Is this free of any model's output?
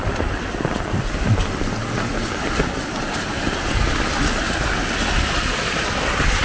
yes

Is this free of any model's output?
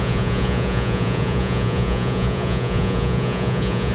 no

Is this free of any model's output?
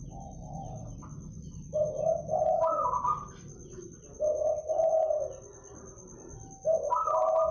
yes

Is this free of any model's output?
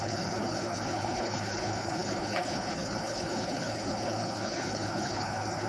no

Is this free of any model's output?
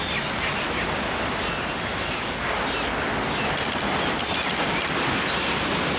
yes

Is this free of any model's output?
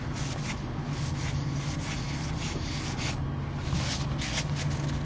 yes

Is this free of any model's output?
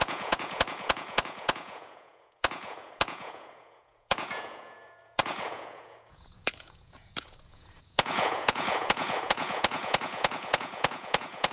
no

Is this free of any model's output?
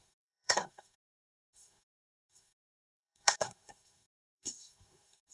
no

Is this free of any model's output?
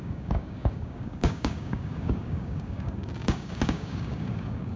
no